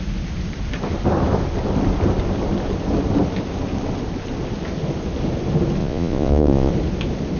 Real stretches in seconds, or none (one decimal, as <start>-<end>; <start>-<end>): 0.0-5.8; 6.7-7.4